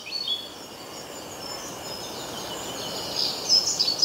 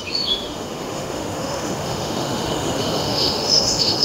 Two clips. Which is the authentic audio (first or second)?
first